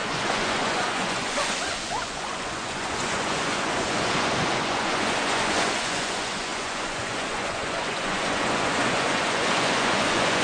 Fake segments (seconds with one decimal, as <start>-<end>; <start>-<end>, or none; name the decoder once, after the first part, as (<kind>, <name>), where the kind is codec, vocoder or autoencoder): 0.0-10.4 (vocoder, Vocos)